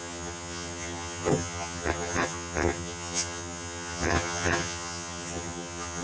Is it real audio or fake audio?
fake